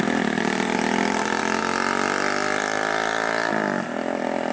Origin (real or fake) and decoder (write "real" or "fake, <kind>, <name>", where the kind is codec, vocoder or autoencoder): real